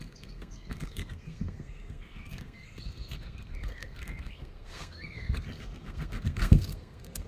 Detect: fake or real fake